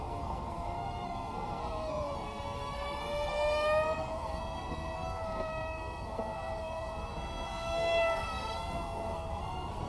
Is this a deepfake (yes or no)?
yes